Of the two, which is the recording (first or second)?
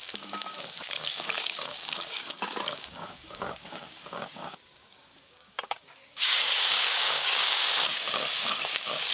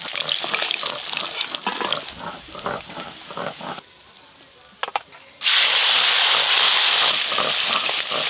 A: second